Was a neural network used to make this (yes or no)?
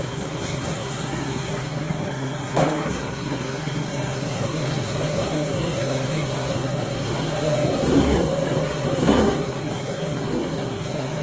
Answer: yes